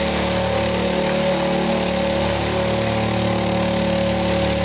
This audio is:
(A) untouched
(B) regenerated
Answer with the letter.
A